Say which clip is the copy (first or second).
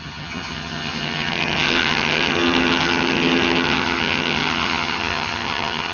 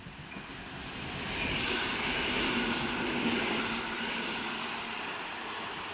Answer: first